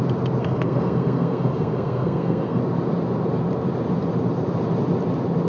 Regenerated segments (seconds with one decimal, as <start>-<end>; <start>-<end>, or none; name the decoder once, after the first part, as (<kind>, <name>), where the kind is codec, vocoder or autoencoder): 0.4-2.6 (codec, SNAC)